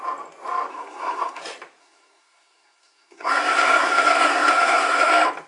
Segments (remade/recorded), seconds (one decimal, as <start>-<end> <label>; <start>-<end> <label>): 0.0-0.7 recorded; 0.7-1.4 remade; 1.4-1.8 recorded; 1.8-5.1 remade; 5.1-5.5 recorded